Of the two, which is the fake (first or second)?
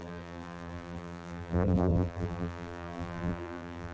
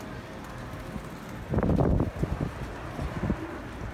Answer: first